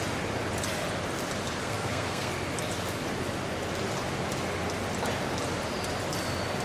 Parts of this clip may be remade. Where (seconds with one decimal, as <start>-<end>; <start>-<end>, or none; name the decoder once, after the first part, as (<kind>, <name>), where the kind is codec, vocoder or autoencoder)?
1.6-2.3 (codec, SNAC)